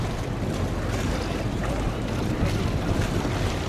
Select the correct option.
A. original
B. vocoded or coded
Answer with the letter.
B